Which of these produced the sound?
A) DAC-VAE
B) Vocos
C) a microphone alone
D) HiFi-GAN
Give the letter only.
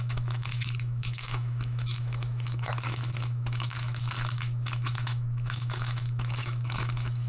A